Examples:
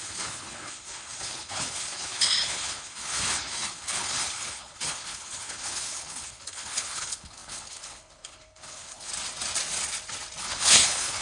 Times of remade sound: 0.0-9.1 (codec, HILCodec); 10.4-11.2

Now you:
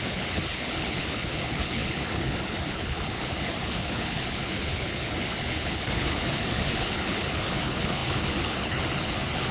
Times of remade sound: 0.0-9.5 (codec, HILCodec)

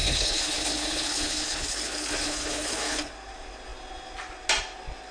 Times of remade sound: 0.0-3.1 (codec, HILCodec)

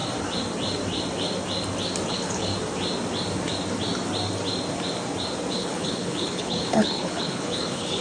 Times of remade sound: 2.1-2.5 (codec, HILCodec); 5.5-8.0

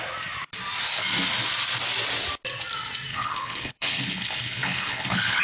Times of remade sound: 3.1-5.4 (codec, HILCodec)

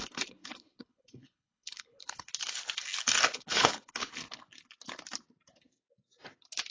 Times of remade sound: 0.0-2.3 (codec, HILCodec); 3.3-4.2

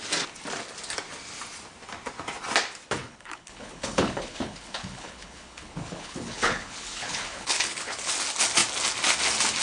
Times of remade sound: 3.0-8.1 (codec, HILCodec)